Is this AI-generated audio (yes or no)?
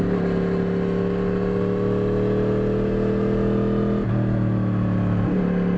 no